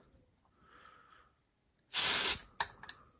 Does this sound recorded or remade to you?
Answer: recorded